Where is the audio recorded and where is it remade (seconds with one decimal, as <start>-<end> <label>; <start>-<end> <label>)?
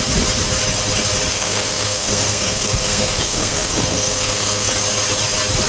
0.0-1.3 recorded; 1.3-4.7 remade; 4.7-5.7 recorded